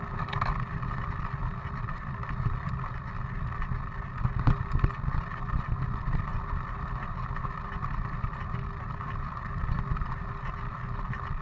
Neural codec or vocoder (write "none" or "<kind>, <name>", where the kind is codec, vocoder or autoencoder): none